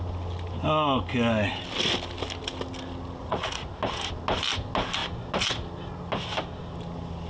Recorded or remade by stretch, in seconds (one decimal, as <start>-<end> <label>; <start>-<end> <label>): 0.0-3.2 recorded; 3.2-3.7 remade; 3.7-7.3 recorded